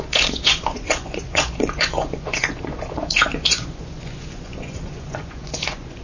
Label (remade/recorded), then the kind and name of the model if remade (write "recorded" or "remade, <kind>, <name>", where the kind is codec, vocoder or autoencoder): remade, vocoder, Vocos